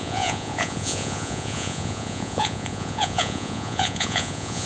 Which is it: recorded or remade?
remade